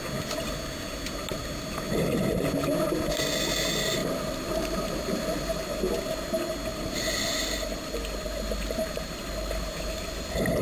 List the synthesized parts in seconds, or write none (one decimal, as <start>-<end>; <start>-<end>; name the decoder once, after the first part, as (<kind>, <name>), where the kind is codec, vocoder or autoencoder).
4.0-5.0 (vocoder, BigVGAN v2); 6.7-9.7